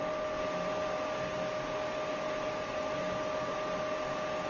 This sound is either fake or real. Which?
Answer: real